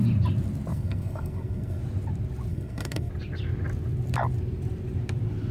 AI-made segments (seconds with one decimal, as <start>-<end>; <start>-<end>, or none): 0.7-1.8; 2.5-3.1